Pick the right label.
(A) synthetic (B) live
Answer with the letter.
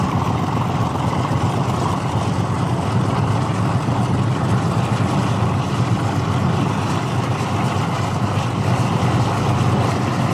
B